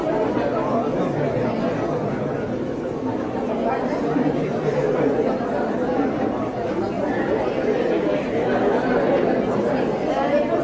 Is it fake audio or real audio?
real